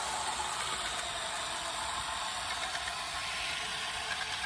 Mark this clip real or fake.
real